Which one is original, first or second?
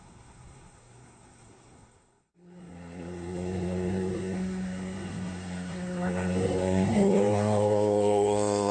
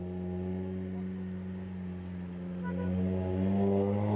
second